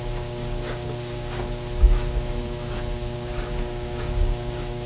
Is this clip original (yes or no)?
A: no